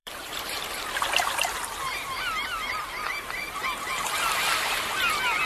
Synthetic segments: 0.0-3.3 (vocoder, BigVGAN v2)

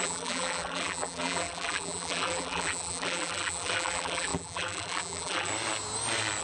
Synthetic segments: 0.0-5.5 (vocoder, BigVGAN v2)

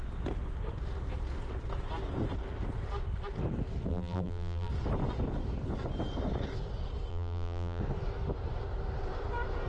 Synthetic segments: 3.9-4.7 (vocoder, BigVGAN v2); 7.1-7.8

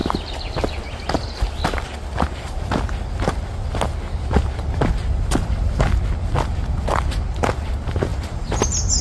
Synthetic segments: 8.1-9.0 (vocoder, BigVGAN v2)

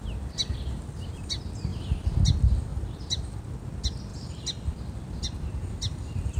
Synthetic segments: 0.9-2.7 (vocoder, BigVGAN v2); 3.5-6.4